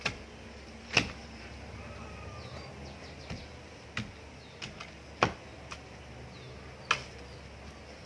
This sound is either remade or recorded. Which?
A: recorded